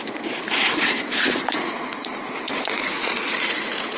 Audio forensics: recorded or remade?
remade